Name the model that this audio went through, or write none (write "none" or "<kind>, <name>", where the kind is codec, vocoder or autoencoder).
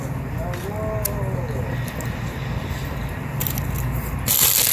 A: none